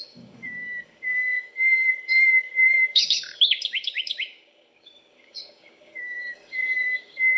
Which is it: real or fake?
fake